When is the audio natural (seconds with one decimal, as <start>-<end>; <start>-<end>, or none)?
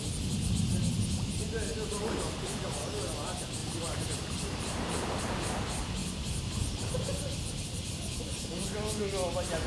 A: 0.0-3.6; 5.2-6.0; 6.9-9.7